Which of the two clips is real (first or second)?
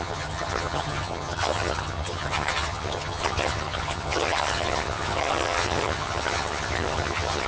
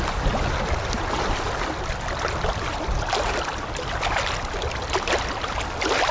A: second